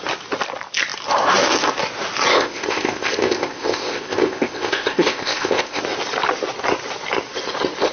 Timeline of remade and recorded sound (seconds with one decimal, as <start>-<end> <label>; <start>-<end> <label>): 0.0-2.3 recorded; 2.3-5.8 remade; 5.8-7.9 recorded